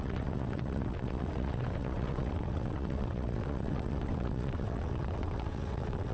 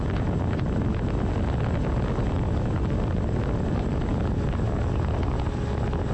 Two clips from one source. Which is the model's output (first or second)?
first